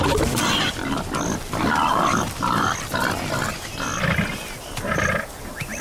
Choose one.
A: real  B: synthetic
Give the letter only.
A